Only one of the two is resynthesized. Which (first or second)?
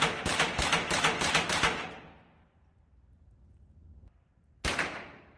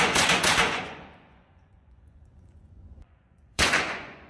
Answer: second